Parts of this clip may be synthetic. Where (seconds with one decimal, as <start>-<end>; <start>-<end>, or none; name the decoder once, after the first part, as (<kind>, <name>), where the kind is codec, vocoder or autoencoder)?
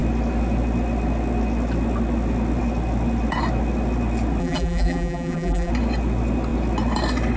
4.4-5.7 (vocoder, BigVGAN v2)